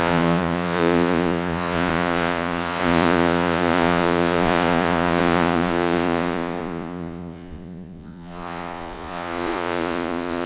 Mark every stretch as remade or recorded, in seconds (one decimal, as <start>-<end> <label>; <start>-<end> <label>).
0.0-10.5 remade

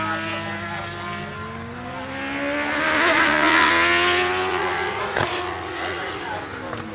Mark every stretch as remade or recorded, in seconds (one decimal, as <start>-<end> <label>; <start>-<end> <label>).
0.0-3.1 recorded; 3.1-3.7 remade; 3.7-4.5 recorded; 4.5-6.3 remade; 6.3-6.9 recorded

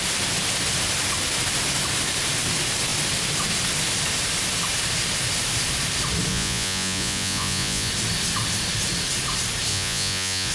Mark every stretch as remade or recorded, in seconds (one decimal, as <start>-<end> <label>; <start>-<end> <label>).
0.0-6.3 recorded; 6.3-7.9 remade; 7.9-9.7 recorded; 9.7-10.5 remade

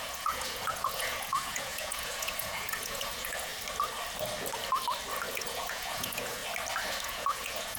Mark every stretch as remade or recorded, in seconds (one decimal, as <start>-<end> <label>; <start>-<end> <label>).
0.0-3.5 remade; 3.5-5.3 recorded; 5.3-6.4 remade; 6.4-7.0 recorded; 7.0-7.8 remade

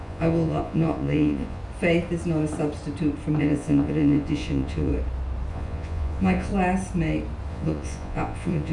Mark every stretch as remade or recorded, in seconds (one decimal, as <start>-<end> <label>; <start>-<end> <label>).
0.0-1.6 remade; 1.6-3.4 recorded; 3.4-4.9 remade; 4.9-5.5 recorded; 5.5-6.5 remade; 6.5-7.5 recorded; 7.5-8.7 remade

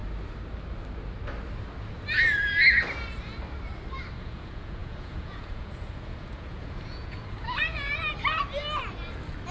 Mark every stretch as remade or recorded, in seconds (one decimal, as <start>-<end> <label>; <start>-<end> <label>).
0.0-4.1 recorded; 4.1-8.0 remade; 8.0-9.5 recorded

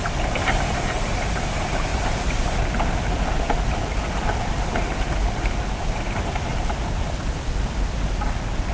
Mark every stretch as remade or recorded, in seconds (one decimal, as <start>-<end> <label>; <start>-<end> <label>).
0.0-8.7 recorded

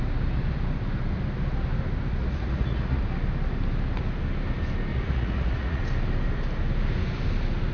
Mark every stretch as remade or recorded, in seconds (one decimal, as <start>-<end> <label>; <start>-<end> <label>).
0.0-2.2 recorded; 2.2-3.0 remade; 3.0-4.9 recorded; 4.9-5.8 remade; 5.8-7.7 recorded